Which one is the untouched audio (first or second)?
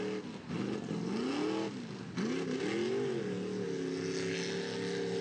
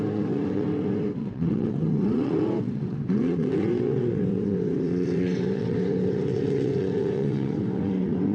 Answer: first